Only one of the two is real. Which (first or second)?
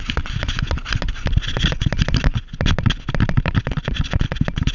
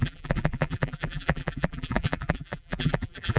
first